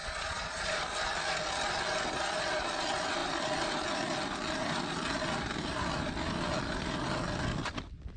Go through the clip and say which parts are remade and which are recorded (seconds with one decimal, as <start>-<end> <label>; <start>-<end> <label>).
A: 0.0-0.8 remade; 0.8-8.2 recorded

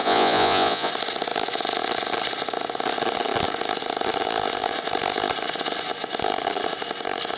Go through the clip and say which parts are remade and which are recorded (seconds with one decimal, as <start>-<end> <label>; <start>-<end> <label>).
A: 0.0-0.9 remade; 0.9-7.4 recorded

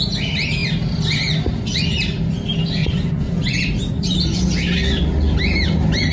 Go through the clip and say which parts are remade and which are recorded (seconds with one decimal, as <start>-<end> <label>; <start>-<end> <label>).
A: 0.0-2.8 recorded; 2.8-3.6 remade; 3.6-6.1 recorded